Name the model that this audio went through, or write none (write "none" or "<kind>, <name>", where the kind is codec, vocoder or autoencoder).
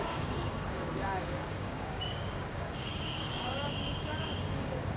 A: codec, DAC